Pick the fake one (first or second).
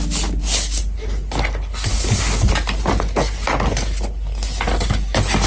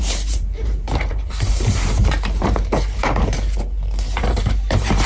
second